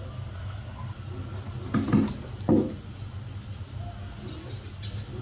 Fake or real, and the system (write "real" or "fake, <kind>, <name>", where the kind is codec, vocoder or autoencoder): real